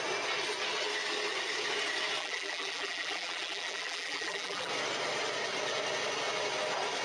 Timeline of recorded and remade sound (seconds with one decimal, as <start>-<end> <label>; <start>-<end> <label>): 0.0-2.2 recorded; 2.2-4.7 remade; 4.7-7.0 recorded